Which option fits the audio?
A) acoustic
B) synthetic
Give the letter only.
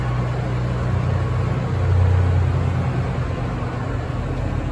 A